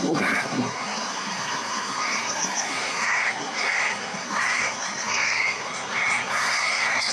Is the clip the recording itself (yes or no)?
no